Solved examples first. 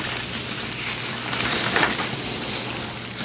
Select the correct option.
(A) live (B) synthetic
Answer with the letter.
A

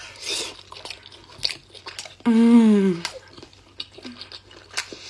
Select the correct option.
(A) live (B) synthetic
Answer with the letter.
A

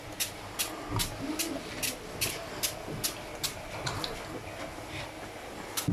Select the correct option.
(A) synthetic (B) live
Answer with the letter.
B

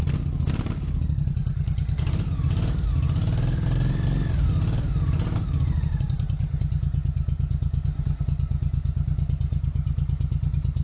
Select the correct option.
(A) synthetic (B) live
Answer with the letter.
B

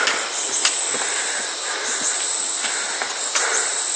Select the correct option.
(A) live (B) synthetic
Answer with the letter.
A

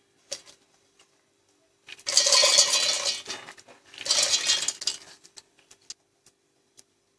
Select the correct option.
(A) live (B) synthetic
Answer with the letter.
A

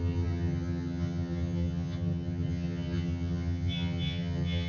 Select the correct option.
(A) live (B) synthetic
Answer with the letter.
B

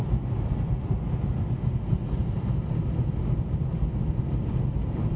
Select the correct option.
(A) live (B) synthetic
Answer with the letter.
A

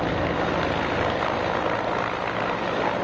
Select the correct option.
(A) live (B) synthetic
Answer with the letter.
A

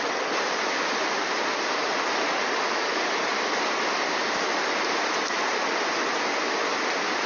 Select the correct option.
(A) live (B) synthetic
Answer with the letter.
A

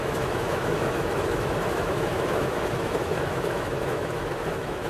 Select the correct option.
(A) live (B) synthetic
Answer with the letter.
B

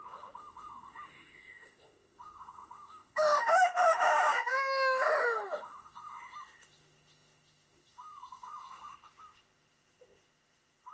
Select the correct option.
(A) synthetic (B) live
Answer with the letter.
A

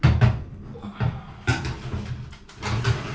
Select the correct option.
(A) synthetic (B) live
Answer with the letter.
B